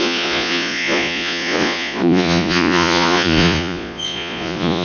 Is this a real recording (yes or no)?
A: no